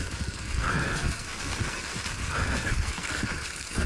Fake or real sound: fake